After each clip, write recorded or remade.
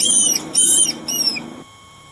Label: remade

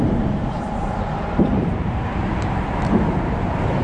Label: remade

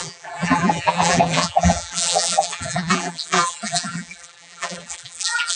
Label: remade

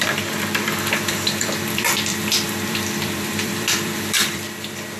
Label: remade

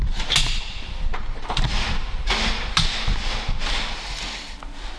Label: recorded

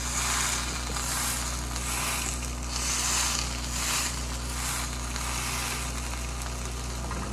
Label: recorded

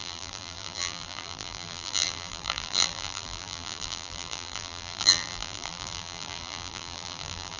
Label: remade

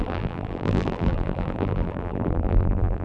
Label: remade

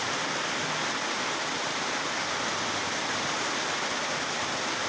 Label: remade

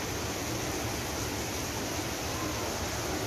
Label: recorded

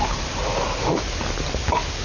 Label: recorded